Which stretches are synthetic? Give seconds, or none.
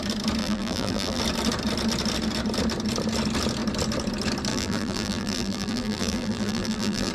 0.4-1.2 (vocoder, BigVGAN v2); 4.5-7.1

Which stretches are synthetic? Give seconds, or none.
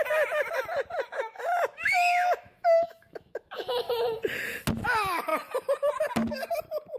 1.1-3.8 (autoencoder, DAC-VAE)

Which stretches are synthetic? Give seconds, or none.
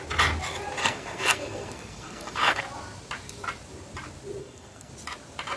0.8-2.6 (codec, SNAC); 4.4-4.9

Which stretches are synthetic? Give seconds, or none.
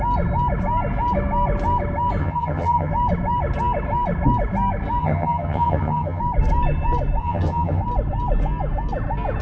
2.2-2.9 (vocoder, HiFi-GAN); 5.0-6.2; 7.2-7.8